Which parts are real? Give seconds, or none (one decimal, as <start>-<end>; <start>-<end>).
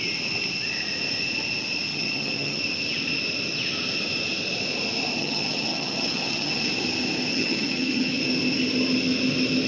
0.0-1.9; 2.6-5.2; 6.7-7.3; 8.2-9.7